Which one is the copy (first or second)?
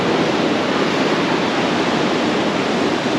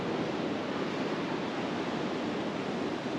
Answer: first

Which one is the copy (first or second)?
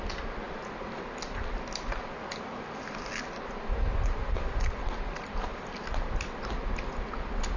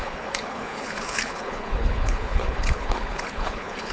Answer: second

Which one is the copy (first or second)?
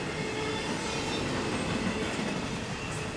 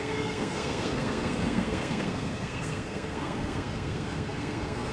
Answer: second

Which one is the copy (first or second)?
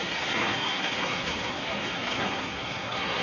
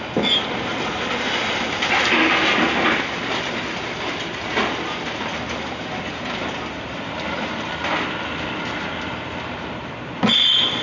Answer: first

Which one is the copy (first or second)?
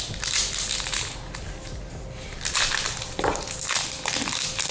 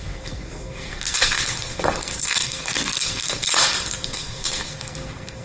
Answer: second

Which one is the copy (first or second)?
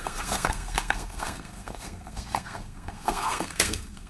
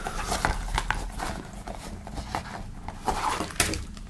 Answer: first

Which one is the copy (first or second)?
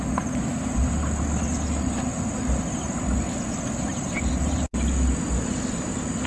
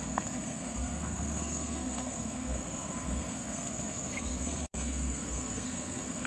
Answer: second